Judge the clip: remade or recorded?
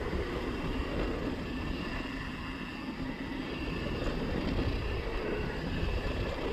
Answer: recorded